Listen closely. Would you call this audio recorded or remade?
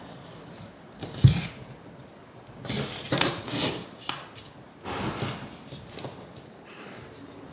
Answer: recorded